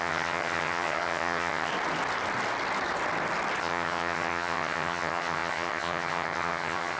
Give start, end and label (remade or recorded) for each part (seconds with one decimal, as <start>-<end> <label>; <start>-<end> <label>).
0.0-1.7 remade; 1.7-3.6 recorded; 3.6-7.0 remade